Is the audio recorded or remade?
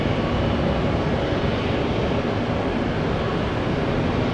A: recorded